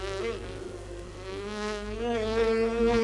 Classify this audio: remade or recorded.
remade